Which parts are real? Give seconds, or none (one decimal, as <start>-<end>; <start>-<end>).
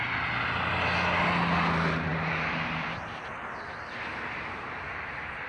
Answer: 0.0-5.5